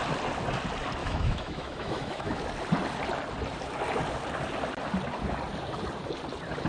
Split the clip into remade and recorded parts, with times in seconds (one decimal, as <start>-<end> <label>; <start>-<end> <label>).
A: 0.0-1.0 recorded; 1.0-2.4 remade; 2.4-6.7 recorded